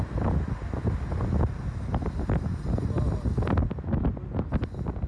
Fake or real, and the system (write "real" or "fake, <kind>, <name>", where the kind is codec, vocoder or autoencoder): real